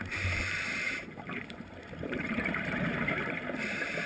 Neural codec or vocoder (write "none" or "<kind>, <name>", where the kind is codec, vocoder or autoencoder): vocoder, BigVGAN v2